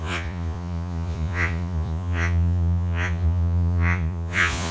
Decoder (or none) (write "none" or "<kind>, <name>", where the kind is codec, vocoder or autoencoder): vocoder, Vocos